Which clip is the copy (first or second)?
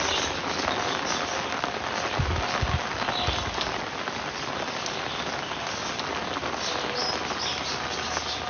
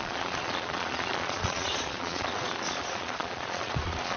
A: second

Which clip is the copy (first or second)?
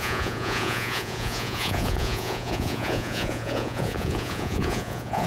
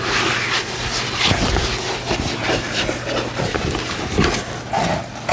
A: first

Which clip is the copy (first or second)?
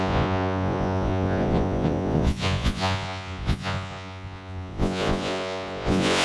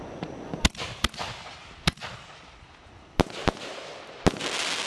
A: first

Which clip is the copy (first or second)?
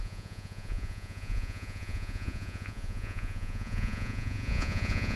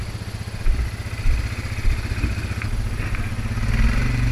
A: first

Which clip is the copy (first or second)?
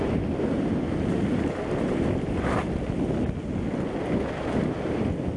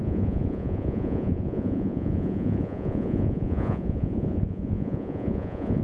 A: second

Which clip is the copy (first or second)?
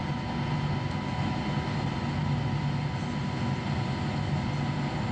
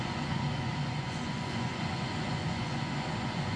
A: second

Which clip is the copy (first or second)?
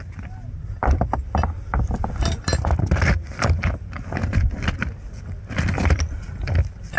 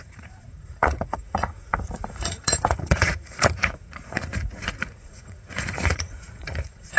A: second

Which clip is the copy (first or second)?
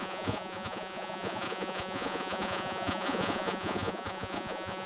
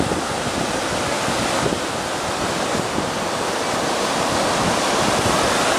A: first